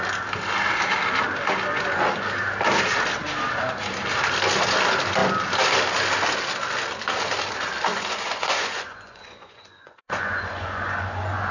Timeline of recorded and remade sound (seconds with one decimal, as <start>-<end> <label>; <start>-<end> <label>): 0.0-7.9 recorded; 7.9-11.5 remade